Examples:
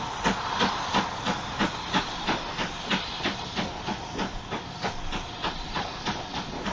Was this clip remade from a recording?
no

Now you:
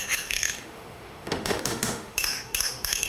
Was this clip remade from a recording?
yes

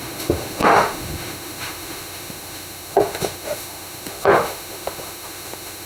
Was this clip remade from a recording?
yes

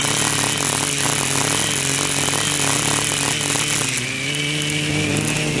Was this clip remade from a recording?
no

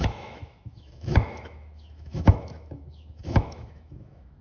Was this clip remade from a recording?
yes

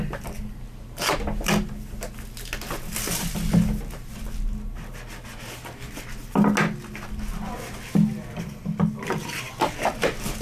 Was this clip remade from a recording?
no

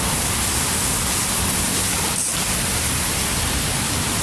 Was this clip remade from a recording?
no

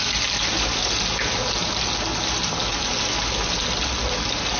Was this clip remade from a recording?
no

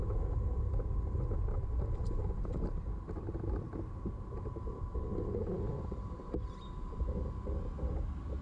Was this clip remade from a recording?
no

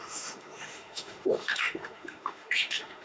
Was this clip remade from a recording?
yes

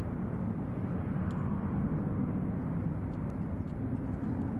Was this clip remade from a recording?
no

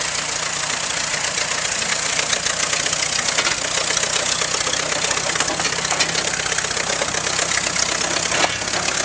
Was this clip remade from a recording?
no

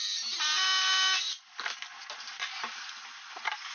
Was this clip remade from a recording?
no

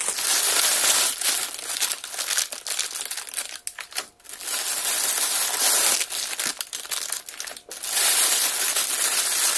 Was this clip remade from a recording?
no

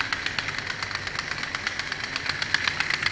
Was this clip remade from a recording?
no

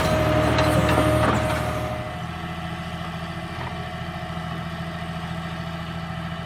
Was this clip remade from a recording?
no